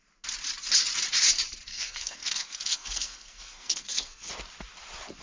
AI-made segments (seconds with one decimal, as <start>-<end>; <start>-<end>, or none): 1.7-4.3